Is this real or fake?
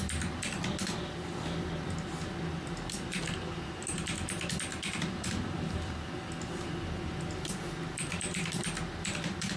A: real